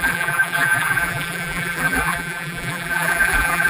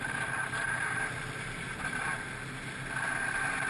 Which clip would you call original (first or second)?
second